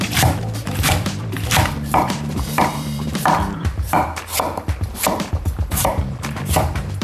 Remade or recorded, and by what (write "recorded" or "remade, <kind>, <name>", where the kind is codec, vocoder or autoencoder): remade, vocoder, BigVGAN v2